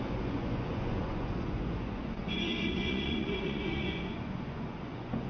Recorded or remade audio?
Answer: remade